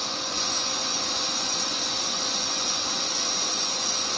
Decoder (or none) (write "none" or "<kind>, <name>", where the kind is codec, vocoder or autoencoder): vocoder, Vocos